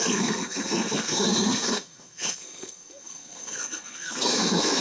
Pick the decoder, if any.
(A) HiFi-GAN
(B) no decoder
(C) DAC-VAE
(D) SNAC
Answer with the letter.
D